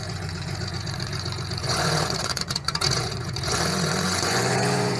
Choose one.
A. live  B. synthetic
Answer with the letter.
B